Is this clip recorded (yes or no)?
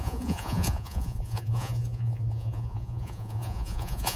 no